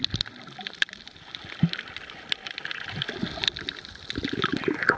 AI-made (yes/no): no